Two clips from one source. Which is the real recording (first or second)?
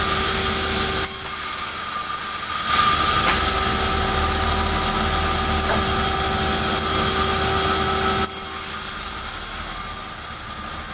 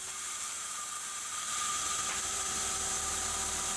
first